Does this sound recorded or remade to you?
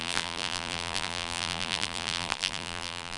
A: remade